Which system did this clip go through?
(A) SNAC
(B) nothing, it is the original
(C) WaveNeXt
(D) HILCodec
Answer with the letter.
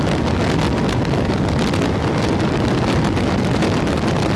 B